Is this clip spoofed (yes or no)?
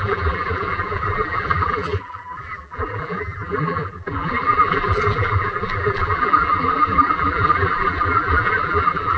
yes